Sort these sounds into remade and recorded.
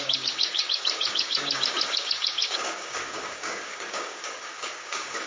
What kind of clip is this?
remade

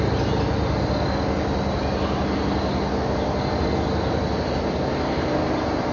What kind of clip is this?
recorded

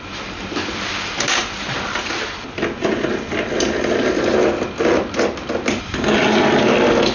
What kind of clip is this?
recorded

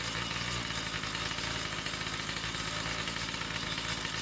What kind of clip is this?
recorded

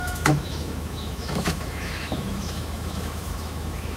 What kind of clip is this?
remade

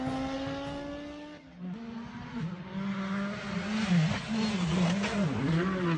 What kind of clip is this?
recorded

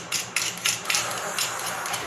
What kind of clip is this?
remade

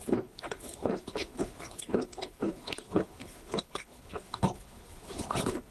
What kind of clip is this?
remade